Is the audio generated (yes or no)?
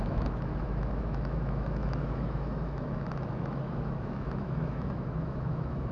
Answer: yes